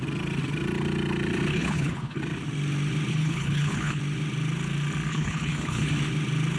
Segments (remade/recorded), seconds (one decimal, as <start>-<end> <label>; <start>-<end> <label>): 0.0-1.5 recorded; 1.5-2.2 remade; 2.2-3.1 recorded; 3.1-4.0 remade; 4.0-5.1 recorded; 5.1-5.9 remade; 5.9-6.6 recorded